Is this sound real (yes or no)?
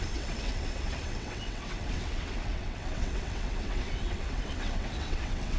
no